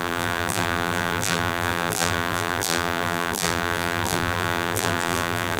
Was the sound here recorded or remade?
remade